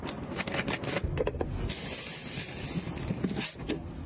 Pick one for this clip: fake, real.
real